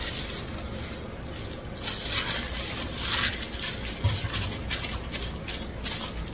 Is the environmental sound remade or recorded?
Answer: recorded